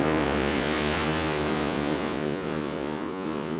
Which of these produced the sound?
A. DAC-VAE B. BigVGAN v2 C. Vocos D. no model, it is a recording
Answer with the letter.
C